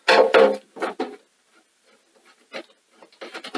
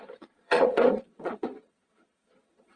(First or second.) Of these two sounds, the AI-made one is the second